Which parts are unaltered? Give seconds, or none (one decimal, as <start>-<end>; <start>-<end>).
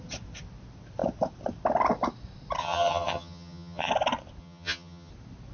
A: 0.0-2.6; 3.9-4.4; 5.1-5.5